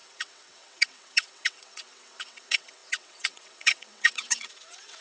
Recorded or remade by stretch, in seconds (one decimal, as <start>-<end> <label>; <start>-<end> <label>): 0.0-5.0 remade